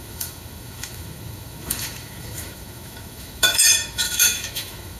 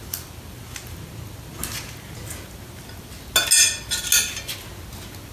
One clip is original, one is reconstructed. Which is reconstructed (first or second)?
first